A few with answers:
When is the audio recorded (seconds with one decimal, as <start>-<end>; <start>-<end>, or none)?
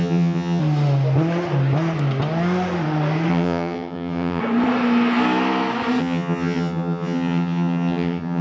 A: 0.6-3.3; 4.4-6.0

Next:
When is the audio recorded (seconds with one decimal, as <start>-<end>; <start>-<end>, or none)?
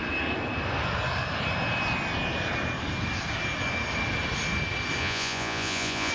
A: 0.0-5.0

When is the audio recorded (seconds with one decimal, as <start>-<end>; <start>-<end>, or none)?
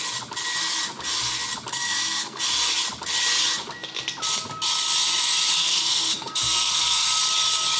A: 0.0-1.7; 2.4-5.6; 7.2-7.8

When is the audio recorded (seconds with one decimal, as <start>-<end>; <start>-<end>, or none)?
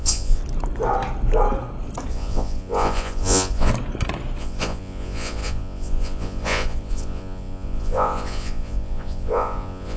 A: 0.4-2.1; 3.7-4.4